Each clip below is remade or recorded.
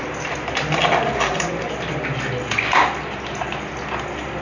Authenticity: recorded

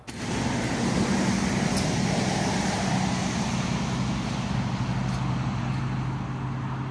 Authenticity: recorded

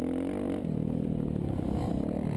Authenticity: recorded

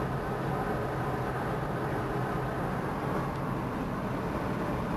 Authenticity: recorded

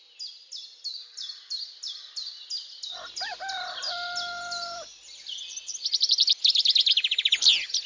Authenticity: recorded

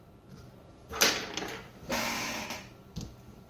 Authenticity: recorded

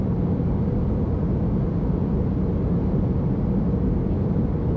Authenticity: recorded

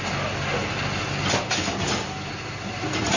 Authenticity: recorded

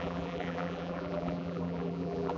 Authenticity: remade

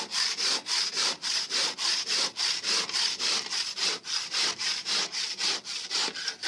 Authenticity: remade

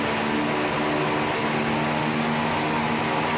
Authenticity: recorded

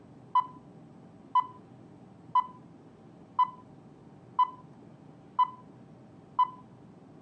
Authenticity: recorded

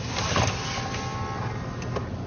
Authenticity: recorded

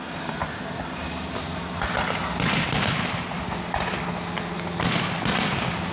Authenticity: recorded